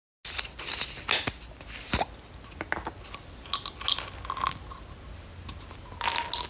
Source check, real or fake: real